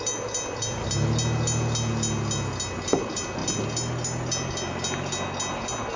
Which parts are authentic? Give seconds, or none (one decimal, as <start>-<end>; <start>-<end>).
0.0-6.0